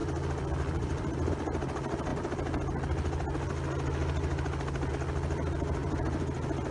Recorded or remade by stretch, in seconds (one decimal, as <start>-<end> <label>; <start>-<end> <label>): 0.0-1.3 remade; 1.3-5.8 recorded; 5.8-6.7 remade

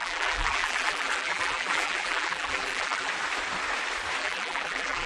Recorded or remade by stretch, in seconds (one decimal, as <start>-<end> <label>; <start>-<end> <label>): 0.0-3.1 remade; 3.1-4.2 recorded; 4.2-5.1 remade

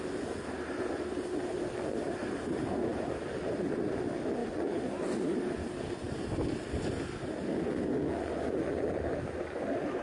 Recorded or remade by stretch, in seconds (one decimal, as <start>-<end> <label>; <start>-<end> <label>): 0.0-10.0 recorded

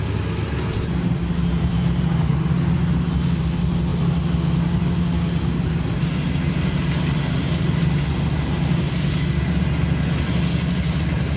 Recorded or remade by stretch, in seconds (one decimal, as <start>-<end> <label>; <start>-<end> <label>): 0.0-1.5 recorded; 1.5-2.3 remade; 2.3-11.4 recorded